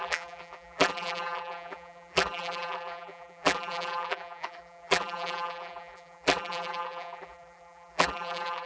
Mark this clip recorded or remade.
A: remade